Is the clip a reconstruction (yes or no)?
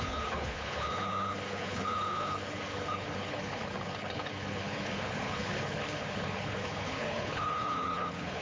yes